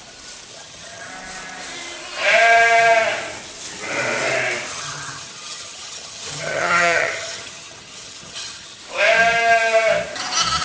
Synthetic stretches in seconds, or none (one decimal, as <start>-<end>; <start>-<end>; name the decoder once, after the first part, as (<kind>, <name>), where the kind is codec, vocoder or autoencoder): 0.5-1.1 (vocoder, HiFi-GAN); 4.7-8.8